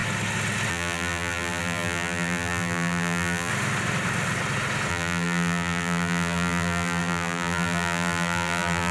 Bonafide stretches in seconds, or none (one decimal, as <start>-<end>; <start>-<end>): 0.0-0.7; 3.5-4.9

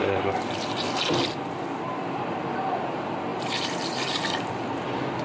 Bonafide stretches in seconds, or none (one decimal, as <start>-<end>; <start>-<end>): 0.0-3.3; 4.2-5.2

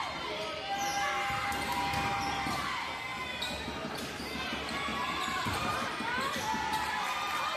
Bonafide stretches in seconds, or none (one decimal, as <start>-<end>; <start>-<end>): 0.0-4.9; 6.9-7.6

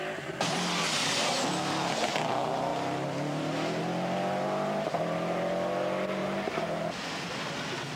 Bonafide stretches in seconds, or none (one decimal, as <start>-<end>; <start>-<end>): 0.0-8.0

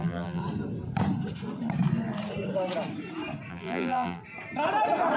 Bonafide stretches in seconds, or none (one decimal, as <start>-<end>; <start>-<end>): 0.4-3.5; 4.2-5.2

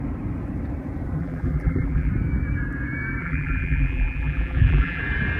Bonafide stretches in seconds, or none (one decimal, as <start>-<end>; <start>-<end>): 0.0-1.2; 2.1-3.2; 5.0-5.4

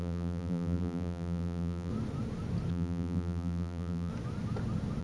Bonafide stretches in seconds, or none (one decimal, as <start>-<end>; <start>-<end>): 1.9-2.7; 4.1-5.0

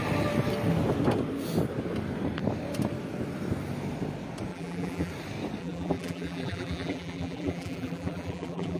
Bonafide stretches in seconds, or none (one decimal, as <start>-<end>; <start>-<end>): 0.0-4.5; 5.1-5.6